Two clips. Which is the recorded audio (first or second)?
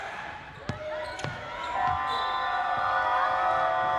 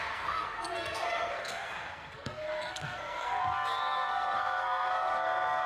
first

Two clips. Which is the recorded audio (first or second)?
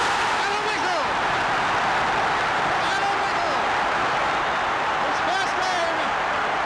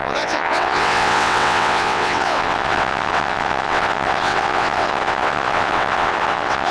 first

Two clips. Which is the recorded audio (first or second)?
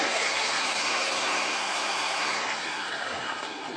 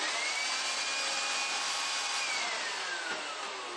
second